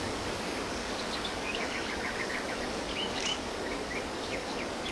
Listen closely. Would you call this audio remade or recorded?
remade